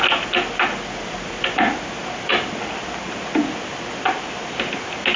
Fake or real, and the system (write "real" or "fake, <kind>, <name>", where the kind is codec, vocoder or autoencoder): real